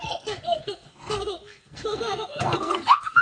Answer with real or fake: fake